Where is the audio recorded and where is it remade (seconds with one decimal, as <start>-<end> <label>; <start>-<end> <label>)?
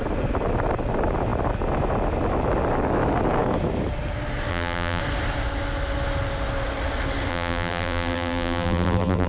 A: 0.0-4.5 recorded; 4.5-5.0 remade; 5.0-7.3 recorded; 7.3-9.3 remade